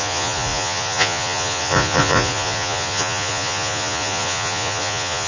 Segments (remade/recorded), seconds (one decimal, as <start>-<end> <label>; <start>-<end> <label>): 0.0-5.3 remade